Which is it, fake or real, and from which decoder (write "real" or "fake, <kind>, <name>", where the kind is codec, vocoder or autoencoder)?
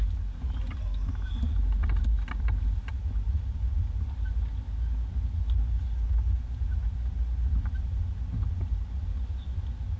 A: real